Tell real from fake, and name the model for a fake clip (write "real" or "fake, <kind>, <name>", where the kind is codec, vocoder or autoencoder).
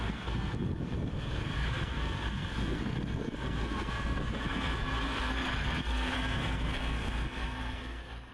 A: fake, codec, SNAC